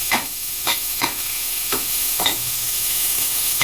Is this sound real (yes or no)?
no